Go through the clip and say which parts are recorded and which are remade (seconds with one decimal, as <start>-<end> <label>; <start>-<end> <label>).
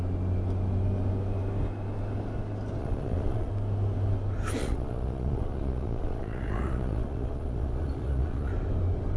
0.0-2.8 recorded; 2.8-3.5 remade; 3.5-4.6 recorded; 4.6-8.5 remade; 8.5-9.2 recorded